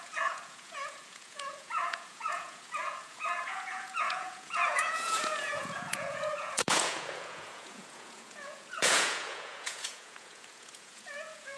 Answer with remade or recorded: remade